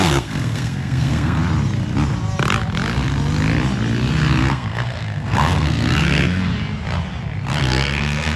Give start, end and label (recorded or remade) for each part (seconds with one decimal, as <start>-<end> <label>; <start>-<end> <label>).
0.0-1.4 remade; 1.4-4.4 recorded; 4.4-6.5 remade; 6.5-7.5 recorded; 7.5-8.4 remade